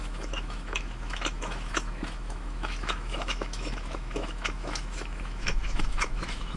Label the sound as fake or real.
fake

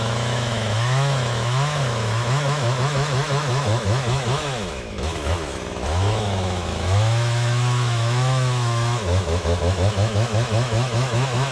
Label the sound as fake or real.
fake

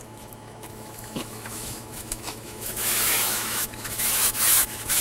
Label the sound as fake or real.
fake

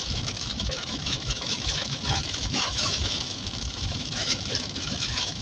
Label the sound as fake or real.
fake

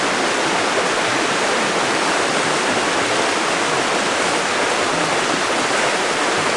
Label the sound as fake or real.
real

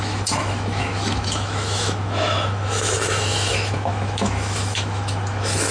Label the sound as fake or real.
fake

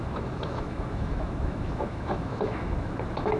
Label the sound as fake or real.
fake